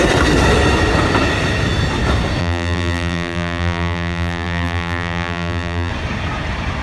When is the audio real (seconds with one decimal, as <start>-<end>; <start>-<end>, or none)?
0.0-2.4; 5.9-6.8